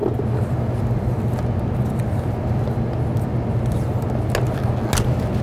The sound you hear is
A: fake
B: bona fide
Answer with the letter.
B